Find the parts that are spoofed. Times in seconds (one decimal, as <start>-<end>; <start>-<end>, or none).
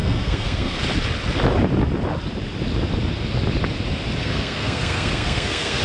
0.0-0.8; 4.2-5.8